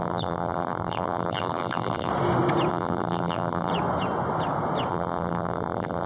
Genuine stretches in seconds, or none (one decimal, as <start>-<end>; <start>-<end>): 2.1-2.7; 3.7-4.9